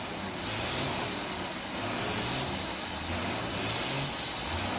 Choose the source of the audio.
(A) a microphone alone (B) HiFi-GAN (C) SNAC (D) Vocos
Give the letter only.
A